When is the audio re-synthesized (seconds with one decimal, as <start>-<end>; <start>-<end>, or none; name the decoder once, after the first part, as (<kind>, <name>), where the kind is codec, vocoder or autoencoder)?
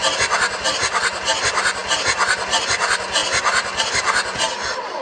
none